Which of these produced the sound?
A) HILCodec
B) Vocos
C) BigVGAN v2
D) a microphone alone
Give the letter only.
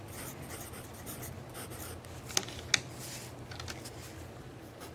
D